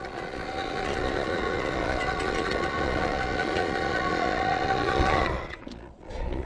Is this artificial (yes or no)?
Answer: yes